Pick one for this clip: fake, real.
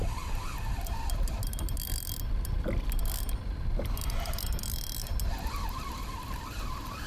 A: real